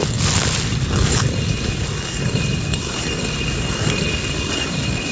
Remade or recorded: recorded